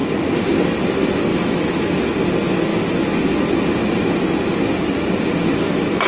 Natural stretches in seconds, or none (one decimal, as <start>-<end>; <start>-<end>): 0.0-1.3; 2.1-6.1